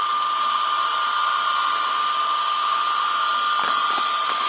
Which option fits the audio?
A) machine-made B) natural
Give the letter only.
B